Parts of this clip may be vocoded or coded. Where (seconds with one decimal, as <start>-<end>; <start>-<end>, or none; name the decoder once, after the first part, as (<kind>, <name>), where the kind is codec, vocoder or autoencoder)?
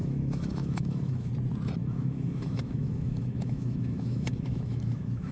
0.0-1.3 (autoencoder, DAC-VAE); 1.8-5.3